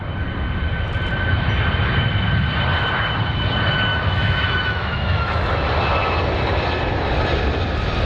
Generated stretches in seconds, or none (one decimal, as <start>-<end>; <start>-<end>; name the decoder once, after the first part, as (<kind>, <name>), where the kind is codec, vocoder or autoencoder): 3.9-5.5 (autoencoder, DAC-VAE)